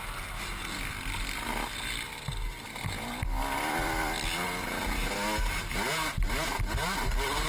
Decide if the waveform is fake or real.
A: real